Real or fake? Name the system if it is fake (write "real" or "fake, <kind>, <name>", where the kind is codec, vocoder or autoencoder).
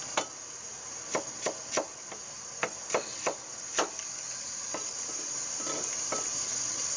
real